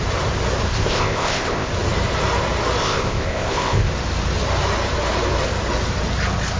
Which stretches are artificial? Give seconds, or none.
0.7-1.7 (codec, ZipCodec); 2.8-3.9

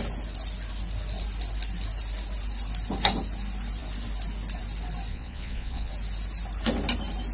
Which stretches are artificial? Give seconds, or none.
5.1-5.9 (vocoder, Vocos)

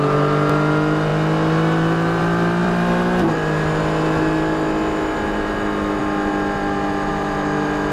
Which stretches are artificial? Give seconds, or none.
2.6-3.8 (vocoder, BigVGAN v2)

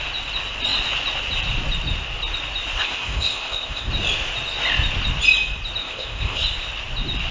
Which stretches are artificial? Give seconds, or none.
2.8-3.9 (codec, ZipCodec); 5.8-6.4

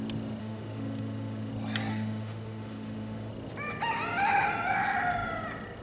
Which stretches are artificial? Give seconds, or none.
0.4-1.5 (autoencoder, DAC-VAE); 1.9-3.3

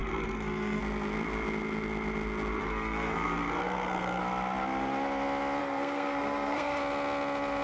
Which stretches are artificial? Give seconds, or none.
0.0-0.8 (codec, SNAC); 2.6-4.2; 5.6-6.8